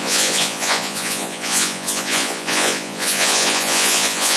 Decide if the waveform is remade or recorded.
remade